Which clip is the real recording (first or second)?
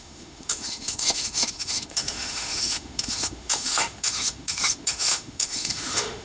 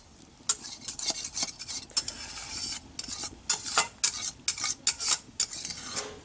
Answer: second